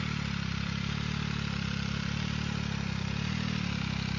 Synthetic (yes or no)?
no